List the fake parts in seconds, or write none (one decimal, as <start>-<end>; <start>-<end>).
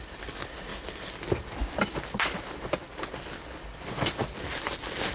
0.7-1.3